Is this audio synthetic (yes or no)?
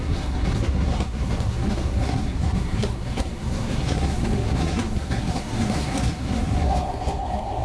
yes